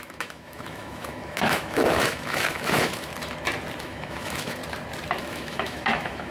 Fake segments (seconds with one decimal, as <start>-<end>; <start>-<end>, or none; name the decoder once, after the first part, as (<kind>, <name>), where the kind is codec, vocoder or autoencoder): 0.0-3.1 (autoencoder, DAC-VAE); 3.8-4.6; 5.2-6.3